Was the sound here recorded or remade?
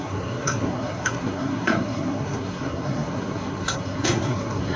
remade